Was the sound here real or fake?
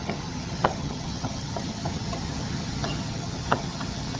fake